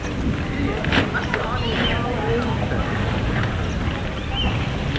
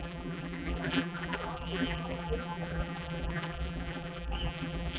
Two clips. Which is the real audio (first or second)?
first